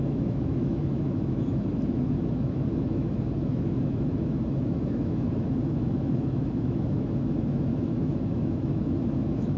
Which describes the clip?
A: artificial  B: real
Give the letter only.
A